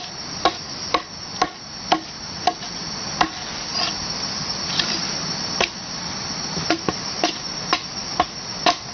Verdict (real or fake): real